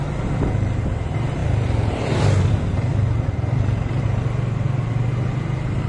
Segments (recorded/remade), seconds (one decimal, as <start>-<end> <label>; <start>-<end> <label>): 0.0-5.9 recorded